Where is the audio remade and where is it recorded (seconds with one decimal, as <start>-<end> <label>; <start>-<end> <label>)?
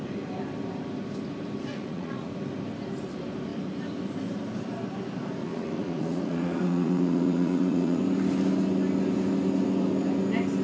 0.0-1.7 recorded; 1.7-2.3 remade; 2.3-5.4 recorded; 5.4-8.0 remade; 8.0-10.6 recorded